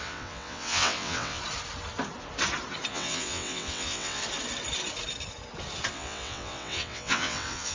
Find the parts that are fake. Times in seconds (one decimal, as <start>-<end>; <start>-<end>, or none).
0.0-1.4; 2.9-4.2; 5.9-7.7